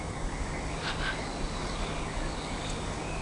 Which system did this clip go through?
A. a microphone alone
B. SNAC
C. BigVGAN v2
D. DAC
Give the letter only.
D